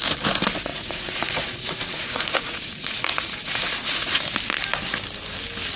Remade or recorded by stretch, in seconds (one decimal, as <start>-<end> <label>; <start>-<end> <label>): 0.0-0.7 recorded; 0.7-4.2 remade; 4.2-5.8 recorded